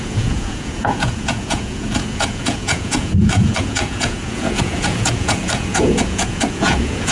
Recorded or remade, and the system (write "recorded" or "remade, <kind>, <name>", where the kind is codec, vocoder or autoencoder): remade, vocoder, Vocos